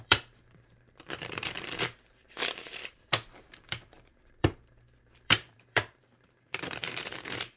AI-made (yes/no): yes